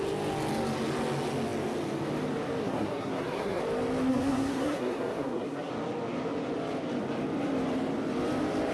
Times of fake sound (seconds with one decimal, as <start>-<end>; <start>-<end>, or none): 2.6-3.6; 4.1-5.7

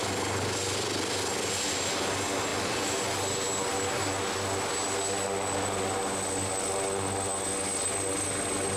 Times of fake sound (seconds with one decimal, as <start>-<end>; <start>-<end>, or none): none

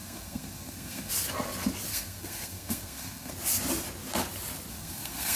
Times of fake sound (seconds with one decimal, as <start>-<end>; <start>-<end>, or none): 0.0-1.1; 1.9-3.3; 4.7-5.4

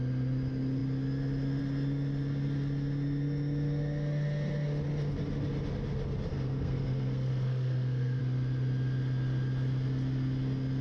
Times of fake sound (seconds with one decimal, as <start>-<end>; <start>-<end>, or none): 6.3-8.2

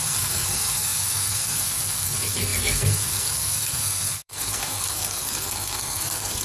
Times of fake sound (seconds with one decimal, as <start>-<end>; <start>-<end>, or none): 0.0-6.4

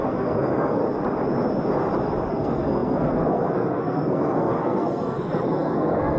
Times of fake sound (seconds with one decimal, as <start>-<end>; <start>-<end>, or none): 0.0-0.8; 2.3-6.2

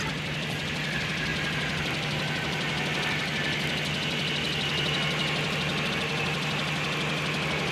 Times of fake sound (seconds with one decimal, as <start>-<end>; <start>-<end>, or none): none

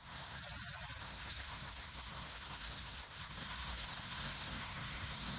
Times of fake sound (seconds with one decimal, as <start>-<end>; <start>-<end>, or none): 0.0-0.4; 1.0-5.4